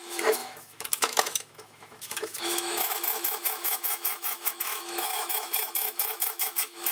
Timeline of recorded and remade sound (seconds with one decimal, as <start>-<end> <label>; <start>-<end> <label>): 0.0-6.9 remade